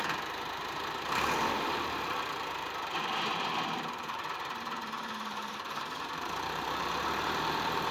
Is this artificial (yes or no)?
yes